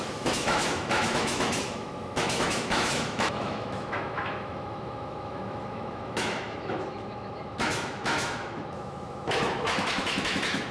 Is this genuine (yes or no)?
no